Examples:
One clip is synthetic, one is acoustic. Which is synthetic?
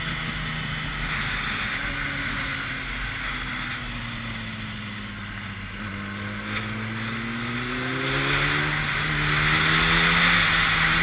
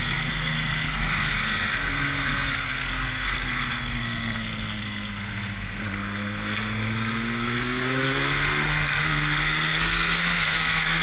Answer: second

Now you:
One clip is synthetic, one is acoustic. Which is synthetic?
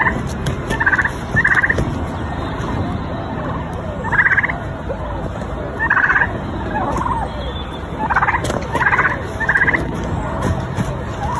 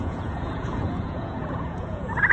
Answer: second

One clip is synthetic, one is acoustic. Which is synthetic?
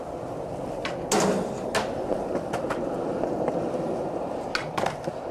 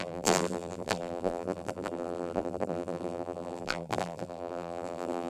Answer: second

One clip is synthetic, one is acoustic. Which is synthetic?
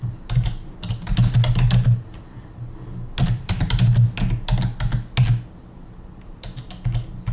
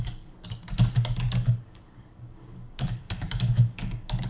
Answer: second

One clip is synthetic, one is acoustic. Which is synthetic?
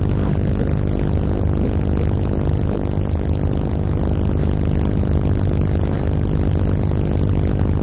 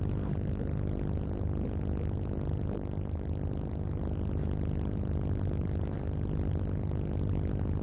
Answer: second